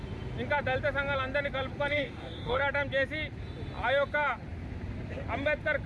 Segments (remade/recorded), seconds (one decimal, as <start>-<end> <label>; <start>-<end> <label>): 0.0-1.9 recorded; 1.9-2.6 remade; 2.6-5.9 recorded